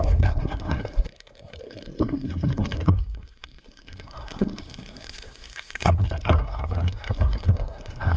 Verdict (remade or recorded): remade